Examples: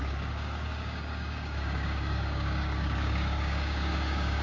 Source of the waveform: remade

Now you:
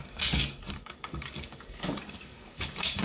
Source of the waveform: remade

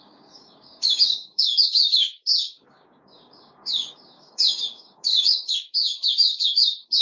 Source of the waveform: remade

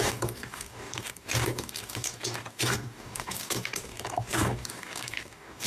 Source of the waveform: remade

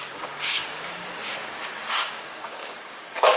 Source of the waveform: remade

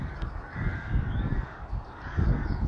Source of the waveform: remade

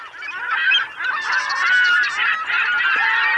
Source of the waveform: recorded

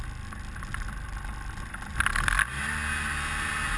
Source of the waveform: recorded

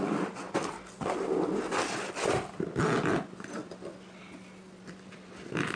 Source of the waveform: recorded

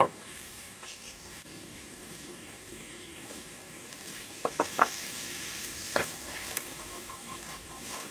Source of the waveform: remade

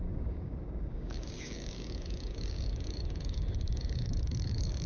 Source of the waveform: remade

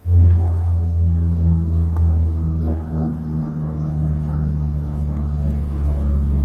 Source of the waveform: remade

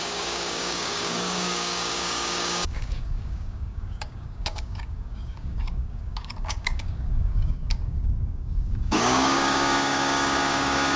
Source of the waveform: remade